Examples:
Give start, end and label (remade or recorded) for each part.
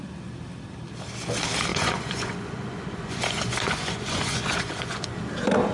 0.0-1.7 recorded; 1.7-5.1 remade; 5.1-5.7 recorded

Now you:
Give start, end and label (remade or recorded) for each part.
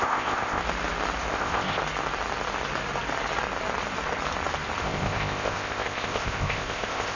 0.0-0.6 remade; 0.6-1.3 recorded; 1.3-1.8 remade; 1.8-4.8 recorded; 4.8-7.2 remade